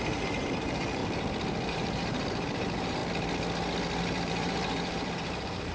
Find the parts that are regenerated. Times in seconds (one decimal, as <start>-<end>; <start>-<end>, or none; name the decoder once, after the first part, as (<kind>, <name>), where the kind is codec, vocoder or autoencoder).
0.0-1.0 (vocoder, BigVGAN v2); 1.7-3.0; 4.0-5.7